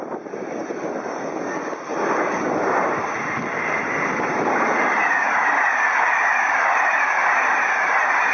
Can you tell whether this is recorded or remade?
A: recorded